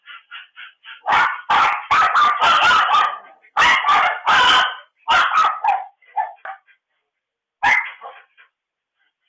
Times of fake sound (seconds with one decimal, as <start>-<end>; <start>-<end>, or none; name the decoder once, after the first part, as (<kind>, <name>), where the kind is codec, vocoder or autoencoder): 0.8-5.9 (vocoder, BigVGAN v2)